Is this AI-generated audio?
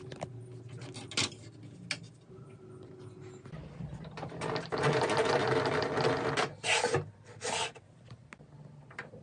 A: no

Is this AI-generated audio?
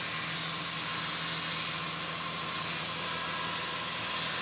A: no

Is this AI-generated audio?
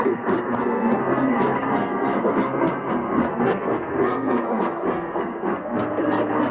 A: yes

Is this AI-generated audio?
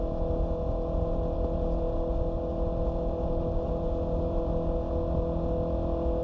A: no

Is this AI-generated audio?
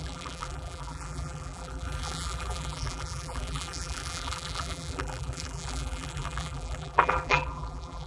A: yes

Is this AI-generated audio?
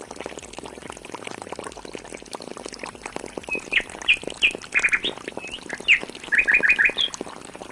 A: no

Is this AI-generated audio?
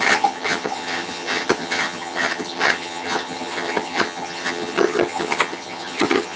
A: yes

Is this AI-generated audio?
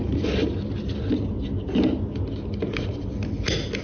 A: no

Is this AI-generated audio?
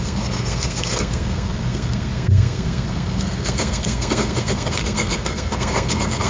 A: yes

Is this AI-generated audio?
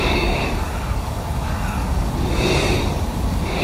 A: yes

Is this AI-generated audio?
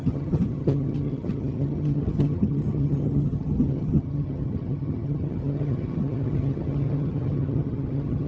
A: yes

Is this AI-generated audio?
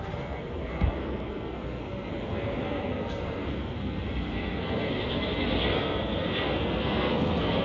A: yes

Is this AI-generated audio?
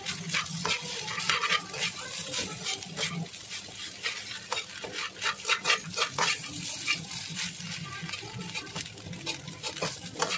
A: no